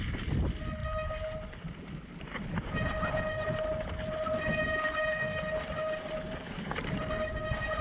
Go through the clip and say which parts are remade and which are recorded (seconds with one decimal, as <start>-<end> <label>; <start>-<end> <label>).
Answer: 0.0-7.8 recorded